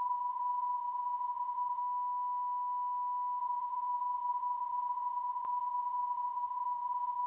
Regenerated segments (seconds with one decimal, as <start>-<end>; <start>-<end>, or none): 0.0-1.8; 3.4-7.3